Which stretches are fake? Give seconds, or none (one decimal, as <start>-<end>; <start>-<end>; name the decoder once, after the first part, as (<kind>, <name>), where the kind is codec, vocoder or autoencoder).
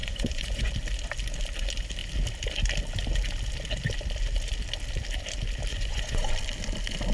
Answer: 0.0-0.7 (vocoder, Vocos); 5.7-6.3